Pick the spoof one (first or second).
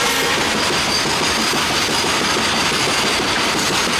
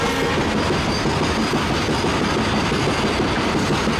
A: first